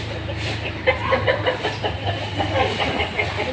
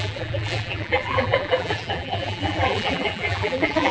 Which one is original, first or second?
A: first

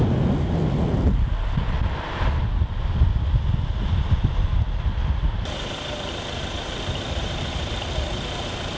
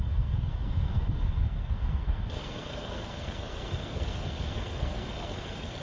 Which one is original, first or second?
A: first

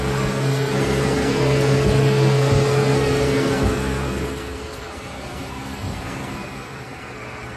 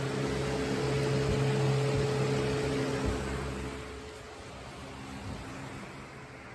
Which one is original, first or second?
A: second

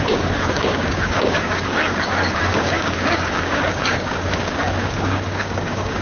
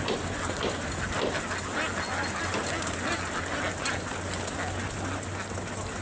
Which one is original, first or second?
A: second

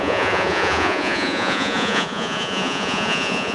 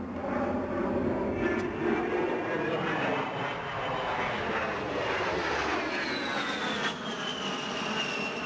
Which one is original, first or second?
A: second